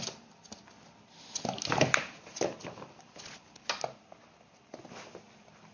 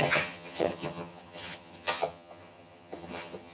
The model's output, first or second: second